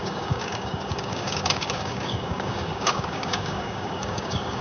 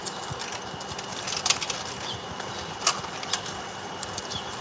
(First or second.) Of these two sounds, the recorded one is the second